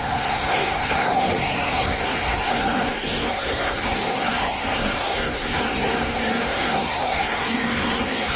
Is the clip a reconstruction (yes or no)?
yes